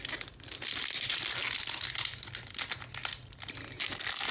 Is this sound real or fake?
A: real